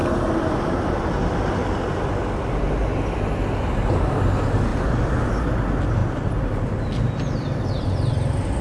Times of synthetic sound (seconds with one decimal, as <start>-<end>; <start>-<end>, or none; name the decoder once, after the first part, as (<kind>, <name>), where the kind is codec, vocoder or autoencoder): 0.0-1.0 (vocoder, BigVGAN v2); 6.0-7.7